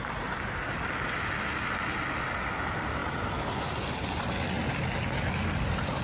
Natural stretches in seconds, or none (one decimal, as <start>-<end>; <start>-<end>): 0.0-6.0